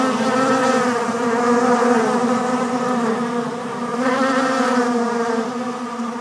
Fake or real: fake